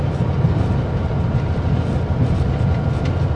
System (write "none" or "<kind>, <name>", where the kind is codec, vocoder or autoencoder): none